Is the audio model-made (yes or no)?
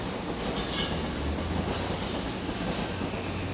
no